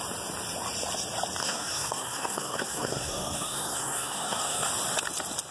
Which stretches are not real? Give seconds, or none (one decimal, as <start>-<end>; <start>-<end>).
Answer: 1.4-4.7